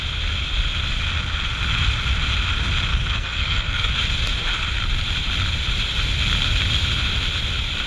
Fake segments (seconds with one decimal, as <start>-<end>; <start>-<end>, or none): 2.9-3.9